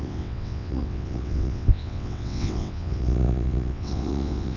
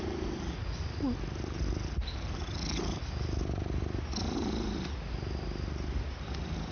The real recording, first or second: second